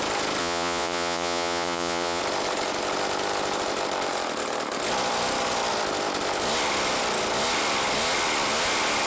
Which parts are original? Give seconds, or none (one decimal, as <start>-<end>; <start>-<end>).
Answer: 0.0-0.4; 2.2-9.1